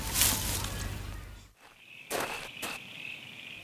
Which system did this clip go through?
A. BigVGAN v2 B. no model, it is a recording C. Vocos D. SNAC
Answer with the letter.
B